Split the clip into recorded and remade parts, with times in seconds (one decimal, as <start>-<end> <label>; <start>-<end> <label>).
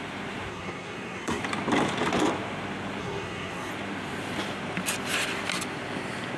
0.0-0.5 recorded; 0.5-1.4 remade; 1.4-3.0 recorded; 3.0-3.7 remade; 3.7-6.4 recorded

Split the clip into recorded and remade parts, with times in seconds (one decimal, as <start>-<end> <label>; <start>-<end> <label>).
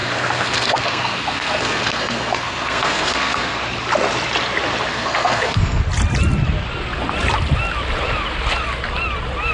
0.0-3.6 remade; 3.6-4.9 recorded; 4.9-5.8 remade; 5.8-9.5 recorded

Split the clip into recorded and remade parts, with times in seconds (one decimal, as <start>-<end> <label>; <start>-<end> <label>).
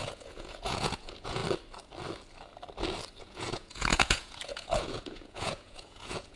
0.0-1.4 remade; 1.4-3.2 recorded; 3.2-6.4 remade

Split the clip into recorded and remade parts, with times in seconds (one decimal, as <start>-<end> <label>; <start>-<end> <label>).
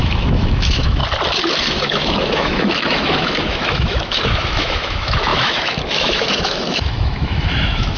0.0-1.0 remade; 1.0-1.6 recorded; 1.6-8.0 remade